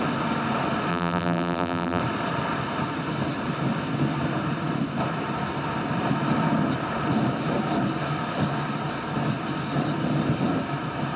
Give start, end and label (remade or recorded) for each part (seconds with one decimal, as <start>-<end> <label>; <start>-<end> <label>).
0.0-0.9 recorded; 0.9-2.0 remade; 2.0-11.2 recorded